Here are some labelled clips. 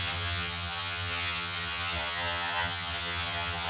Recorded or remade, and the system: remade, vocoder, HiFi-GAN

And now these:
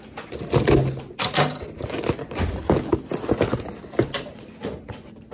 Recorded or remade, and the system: recorded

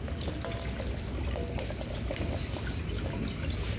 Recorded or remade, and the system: recorded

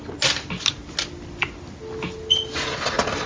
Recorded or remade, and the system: recorded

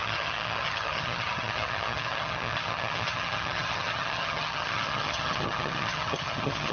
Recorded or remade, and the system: remade, vocoder, HiFi-GAN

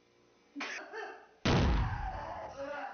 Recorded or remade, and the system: recorded